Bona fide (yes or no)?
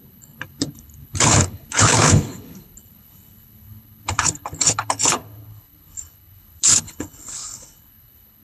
no